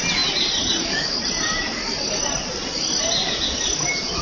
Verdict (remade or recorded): recorded